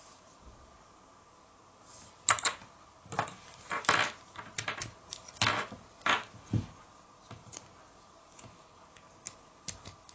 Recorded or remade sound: recorded